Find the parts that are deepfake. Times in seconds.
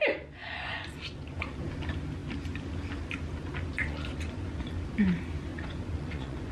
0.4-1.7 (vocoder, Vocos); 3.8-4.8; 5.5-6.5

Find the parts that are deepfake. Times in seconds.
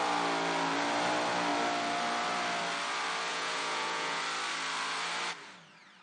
3.3-4.2 (vocoder, Vocos)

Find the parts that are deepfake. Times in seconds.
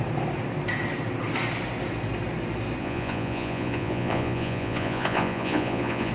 2.8-6.1 (vocoder, Vocos)